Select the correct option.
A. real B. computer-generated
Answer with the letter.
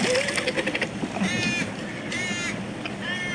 A